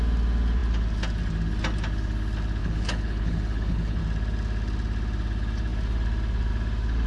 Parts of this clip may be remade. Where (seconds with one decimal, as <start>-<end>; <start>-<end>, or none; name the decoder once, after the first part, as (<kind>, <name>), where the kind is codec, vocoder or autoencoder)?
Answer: 2.6-4.0 (codec, HILCodec)